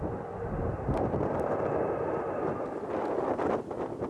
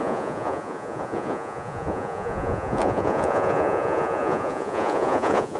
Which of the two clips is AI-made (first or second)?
second